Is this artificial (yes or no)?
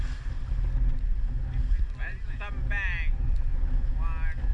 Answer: no